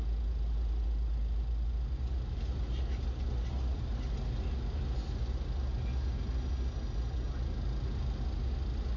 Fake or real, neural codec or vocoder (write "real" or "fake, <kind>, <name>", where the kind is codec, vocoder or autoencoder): real